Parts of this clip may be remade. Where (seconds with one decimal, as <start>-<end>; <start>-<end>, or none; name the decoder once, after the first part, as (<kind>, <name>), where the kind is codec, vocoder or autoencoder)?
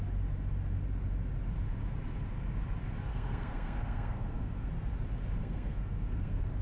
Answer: 3.1-4.7 (codec, SNAC); 5.4-6.6